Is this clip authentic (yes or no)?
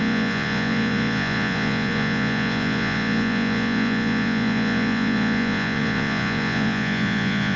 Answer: no